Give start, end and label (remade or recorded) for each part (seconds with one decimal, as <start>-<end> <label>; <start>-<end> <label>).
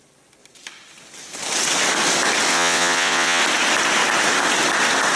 0.0-2.5 recorded; 2.5-3.4 remade; 3.4-5.2 recorded